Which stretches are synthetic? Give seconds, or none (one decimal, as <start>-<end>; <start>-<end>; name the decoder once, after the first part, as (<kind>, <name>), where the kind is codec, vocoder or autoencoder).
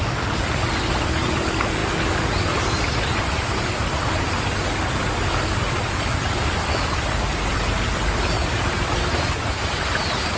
none